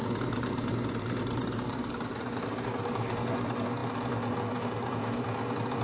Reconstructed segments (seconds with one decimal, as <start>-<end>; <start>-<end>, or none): 0.0-3.3